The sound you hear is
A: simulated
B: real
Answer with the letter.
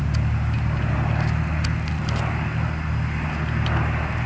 B